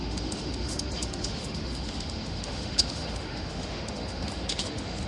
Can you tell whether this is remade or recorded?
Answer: remade